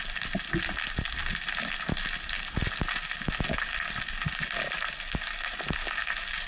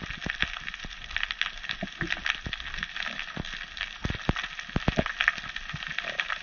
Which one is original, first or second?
first